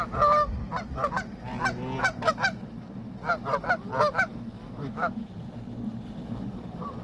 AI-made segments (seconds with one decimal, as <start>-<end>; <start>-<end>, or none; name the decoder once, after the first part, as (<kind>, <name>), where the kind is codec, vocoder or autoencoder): 4.3-5.3 (autoencoder, DAC-VAE)